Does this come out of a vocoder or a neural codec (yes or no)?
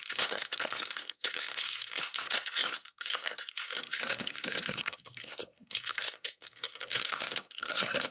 yes